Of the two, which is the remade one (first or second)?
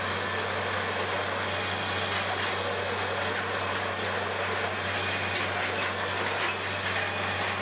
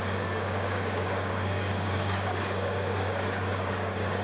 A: second